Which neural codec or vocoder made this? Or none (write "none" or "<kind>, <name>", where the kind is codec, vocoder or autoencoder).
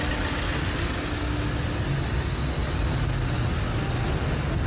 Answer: none